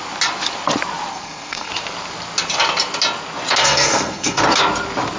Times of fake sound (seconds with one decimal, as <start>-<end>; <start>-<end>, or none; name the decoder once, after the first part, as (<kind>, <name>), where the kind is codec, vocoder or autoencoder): 1.1-1.7 (codec, SNAC); 3.6-4.4